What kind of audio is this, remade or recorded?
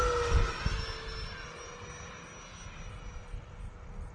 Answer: recorded